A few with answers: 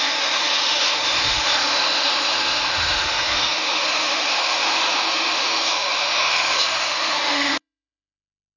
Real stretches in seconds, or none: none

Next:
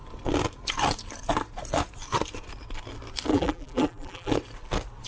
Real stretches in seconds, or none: 0.0-3.3; 4.3-5.1

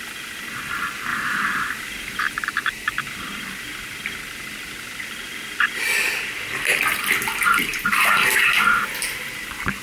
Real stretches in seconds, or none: 0.0-1.1; 2.2-9.8